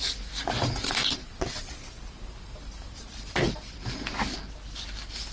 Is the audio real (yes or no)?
yes